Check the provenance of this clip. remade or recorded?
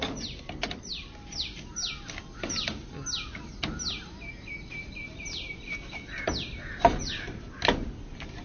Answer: recorded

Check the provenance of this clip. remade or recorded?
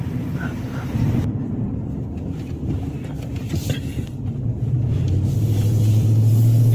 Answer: remade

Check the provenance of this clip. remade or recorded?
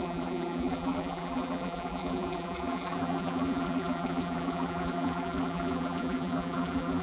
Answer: remade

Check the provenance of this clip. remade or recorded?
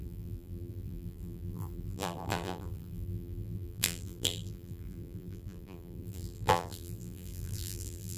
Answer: remade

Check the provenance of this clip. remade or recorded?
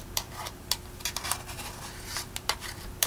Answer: remade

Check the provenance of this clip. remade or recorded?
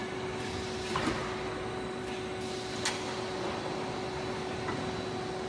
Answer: recorded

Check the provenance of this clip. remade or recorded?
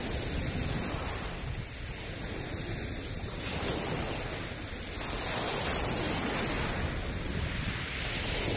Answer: recorded